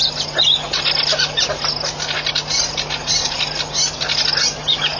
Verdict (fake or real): real